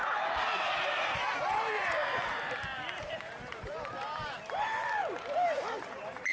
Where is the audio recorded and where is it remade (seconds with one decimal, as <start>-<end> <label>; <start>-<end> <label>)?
0.0-6.3 remade